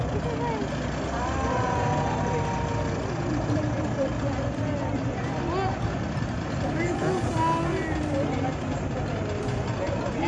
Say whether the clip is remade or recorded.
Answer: recorded